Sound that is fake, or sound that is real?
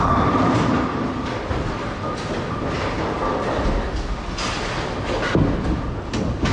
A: real